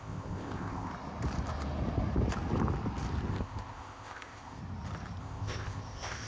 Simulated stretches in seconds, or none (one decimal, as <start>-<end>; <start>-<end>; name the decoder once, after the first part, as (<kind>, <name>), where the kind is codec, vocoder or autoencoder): 0.0-0.9 (codec, ZipCodec); 3.3-4.6; 5.2-6.3